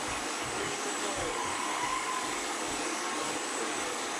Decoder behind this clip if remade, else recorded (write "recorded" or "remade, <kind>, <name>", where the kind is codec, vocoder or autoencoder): remade, codec, DAC